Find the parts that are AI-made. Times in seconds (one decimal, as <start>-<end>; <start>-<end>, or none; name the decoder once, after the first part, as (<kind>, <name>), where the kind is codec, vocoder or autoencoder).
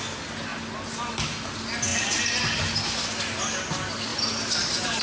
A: none